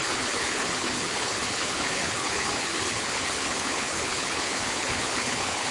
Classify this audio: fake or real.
fake